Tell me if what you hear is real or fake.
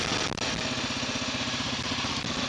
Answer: real